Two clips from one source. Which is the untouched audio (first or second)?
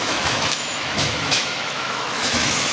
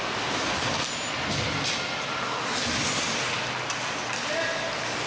second